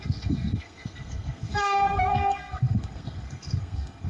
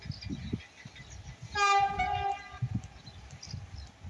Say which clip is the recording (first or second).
second